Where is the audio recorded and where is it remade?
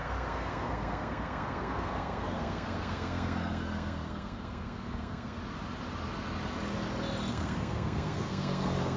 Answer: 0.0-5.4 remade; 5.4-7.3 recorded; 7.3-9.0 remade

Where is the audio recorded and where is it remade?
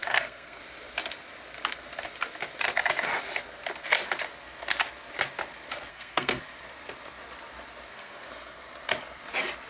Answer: 0.0-0.6 remade; 0.6-5.9 recorded; 5.9-6.4 remade; 6.4-7.9 recorded; 7.9-8.6 remade; 8.6-9.7 recorded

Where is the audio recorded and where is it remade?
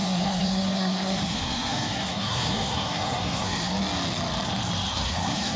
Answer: 0.0-3.7 remade; 3.7-4.9 recorded; 4.9-5.6 remade